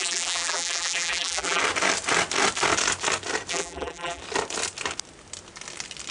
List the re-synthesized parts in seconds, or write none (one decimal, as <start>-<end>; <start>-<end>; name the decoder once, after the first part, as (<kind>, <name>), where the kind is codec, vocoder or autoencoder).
0.0-1.6 (vocoder, BigVGAN v2); 3.5-4.2